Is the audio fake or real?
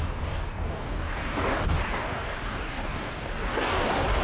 fake